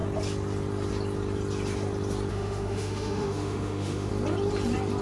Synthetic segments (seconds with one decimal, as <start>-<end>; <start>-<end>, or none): 2.3-4.1